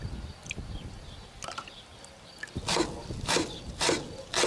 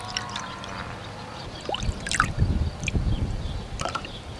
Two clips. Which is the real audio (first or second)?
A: first